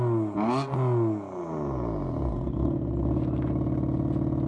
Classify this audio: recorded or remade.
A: recorded